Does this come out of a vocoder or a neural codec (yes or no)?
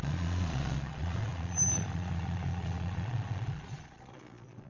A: yes